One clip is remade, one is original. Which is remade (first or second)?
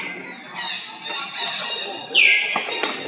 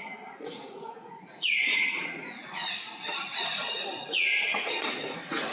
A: second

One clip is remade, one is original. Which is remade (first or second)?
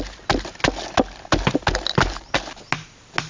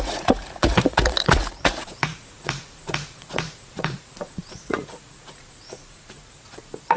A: second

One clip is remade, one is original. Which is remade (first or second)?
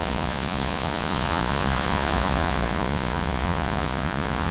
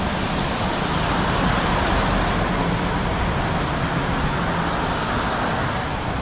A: first